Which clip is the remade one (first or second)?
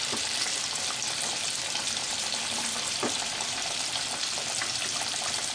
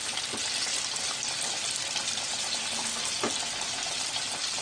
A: first